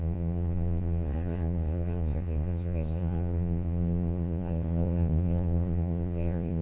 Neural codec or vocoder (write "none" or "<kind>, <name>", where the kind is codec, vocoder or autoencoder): vocoder, Vocos